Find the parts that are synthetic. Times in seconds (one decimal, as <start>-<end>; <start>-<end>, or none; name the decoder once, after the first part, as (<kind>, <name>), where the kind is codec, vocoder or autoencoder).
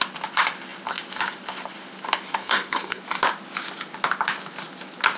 2.4-3.0 (codec, SNAC)